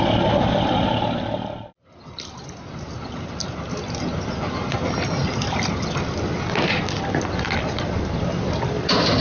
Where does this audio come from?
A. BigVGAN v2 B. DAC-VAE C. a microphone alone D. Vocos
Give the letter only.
C